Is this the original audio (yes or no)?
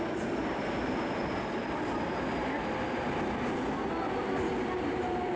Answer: yes